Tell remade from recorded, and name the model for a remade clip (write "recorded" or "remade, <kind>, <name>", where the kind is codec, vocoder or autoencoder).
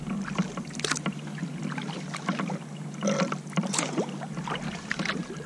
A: recorded